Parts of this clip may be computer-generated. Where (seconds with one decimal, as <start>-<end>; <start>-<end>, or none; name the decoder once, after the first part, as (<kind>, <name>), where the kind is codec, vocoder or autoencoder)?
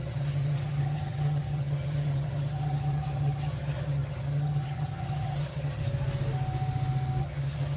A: 0.0-5.8 (vocoder, HiFi-GAN); 7.2-7.8